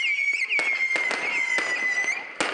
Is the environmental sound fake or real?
real